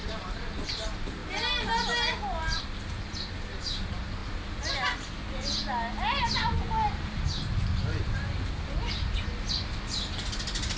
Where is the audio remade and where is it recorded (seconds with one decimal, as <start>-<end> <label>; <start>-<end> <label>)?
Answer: 0.0-0.6 remade; 0.6-4.2 recorded; 4.2-4.7 remade; 4.7-10.8 recorded